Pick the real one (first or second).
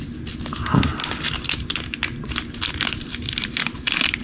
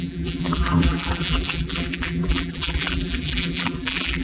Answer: first